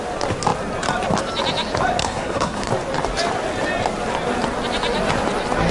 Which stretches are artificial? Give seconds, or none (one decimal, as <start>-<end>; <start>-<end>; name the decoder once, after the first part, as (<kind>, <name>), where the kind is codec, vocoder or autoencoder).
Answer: 2.0-2.7 (codec, SNAC)